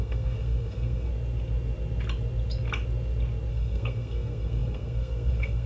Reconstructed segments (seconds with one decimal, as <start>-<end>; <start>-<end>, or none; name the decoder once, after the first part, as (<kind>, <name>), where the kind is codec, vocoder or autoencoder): 0.0-1.1 (codec, SNAC); 3.5-5.7

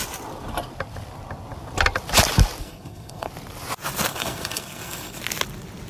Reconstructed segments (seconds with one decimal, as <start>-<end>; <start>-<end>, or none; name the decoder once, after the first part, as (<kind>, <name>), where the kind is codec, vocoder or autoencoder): 2.6-3.3 (codec, SNAC); 4.1-5.2

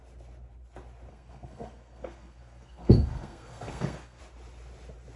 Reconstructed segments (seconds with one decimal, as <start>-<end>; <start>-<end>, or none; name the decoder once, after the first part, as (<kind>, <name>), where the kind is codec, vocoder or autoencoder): 1.1-4.2 (codec, SNAC)